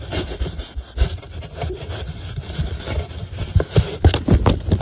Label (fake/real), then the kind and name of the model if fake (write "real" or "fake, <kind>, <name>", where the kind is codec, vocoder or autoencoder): real